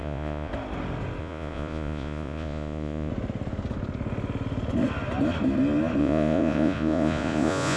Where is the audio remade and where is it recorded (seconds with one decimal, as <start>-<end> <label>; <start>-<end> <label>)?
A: 0.0-0.5 remade; 0.5-1.2 recorded; 1.2-3.1 remade; 3.1-6.0 recorded; 6.0-7.8 remade